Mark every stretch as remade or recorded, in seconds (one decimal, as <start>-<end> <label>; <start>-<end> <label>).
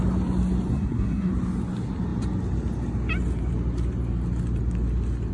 0.0-0.7 recorded; 0.7-1.3 remade; 1.3-5.3 recorded